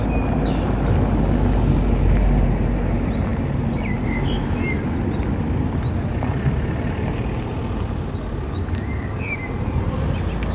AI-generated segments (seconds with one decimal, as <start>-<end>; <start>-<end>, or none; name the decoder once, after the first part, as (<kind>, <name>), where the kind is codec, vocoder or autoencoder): none